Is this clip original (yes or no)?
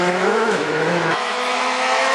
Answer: no